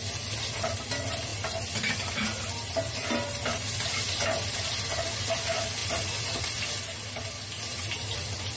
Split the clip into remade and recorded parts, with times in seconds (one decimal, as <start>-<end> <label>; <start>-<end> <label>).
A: 0.0-8.6 recorded